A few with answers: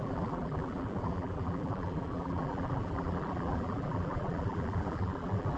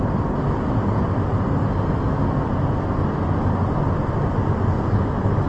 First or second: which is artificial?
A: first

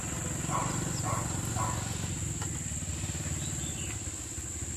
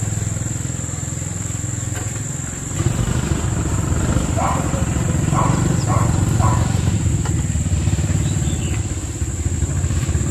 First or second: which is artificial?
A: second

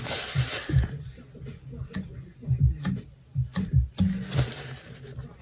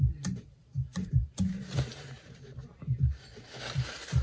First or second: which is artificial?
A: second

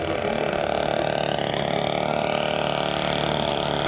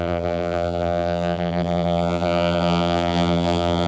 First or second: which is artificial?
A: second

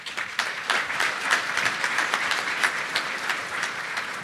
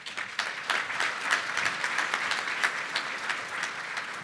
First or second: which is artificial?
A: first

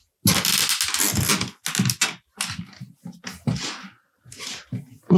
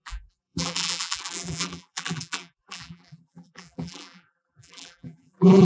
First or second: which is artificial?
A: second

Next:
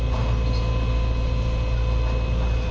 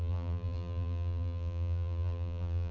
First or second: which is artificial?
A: second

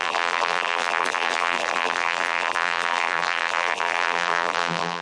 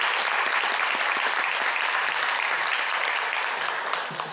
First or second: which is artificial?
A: first